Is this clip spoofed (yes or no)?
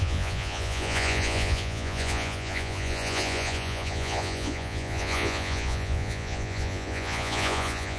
yes